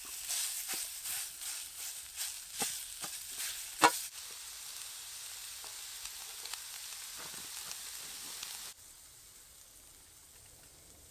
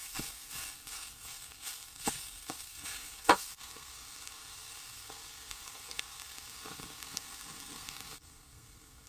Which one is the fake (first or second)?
second